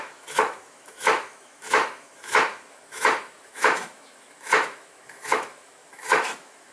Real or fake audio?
fake